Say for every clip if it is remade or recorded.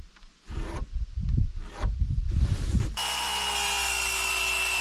recorded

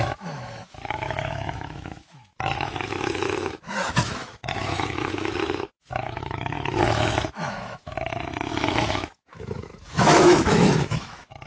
remade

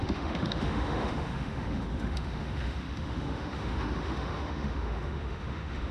remade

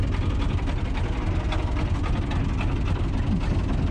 recorded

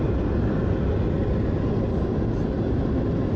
recorded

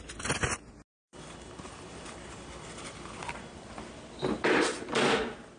recorded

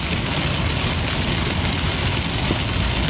recorded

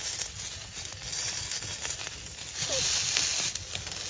recorded